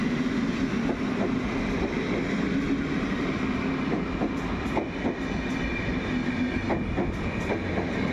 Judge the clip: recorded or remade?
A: recorded